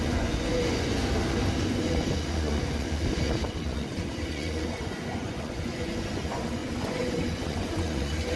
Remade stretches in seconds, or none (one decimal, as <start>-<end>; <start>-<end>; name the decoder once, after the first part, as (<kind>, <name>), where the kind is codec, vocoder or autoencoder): 0.0-1.0 (vocoder, Vocos); 1.6-8.4